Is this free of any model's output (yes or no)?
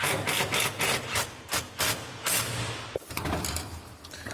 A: yes